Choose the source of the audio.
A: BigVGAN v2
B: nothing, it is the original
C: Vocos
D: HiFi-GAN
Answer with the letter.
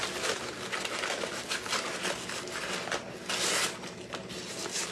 B